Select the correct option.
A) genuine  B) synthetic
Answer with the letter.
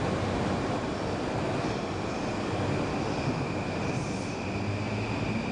A